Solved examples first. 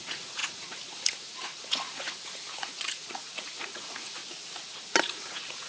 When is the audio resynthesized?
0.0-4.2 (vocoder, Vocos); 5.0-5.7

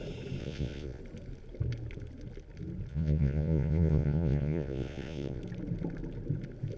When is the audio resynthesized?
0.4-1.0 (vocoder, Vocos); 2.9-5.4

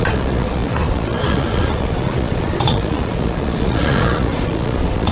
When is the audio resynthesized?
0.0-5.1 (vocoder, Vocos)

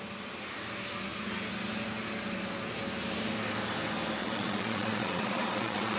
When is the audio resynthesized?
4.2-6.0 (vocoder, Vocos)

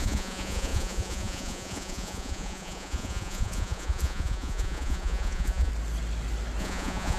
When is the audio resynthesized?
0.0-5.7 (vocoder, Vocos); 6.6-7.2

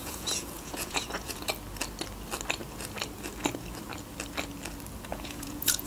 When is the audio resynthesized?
0.0-1.5 (vocoder, Vocos); 5.1-5.9

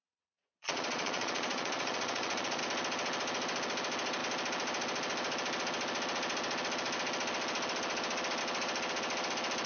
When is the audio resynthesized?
0.0-2.6 (vocoder, Vocos)